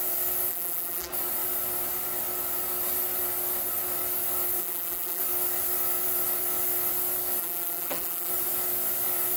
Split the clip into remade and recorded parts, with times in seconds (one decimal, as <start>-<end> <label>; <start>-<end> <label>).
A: 0.0-0.5 recorded; 0.5-1.1 remade; 1.1-4.6 recorded; 4.6-5.2 remade; 5.2-7.4 recorded; 7.4-8.3 remade; 8.3-9.4 recorded